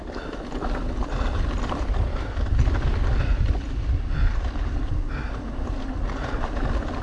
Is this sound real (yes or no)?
yes